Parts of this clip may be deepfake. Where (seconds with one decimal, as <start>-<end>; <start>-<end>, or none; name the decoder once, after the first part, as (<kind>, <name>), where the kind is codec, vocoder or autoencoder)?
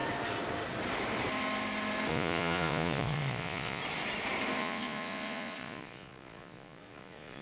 2.1-3.8 (vocoder, Vocos); 4.6-7.4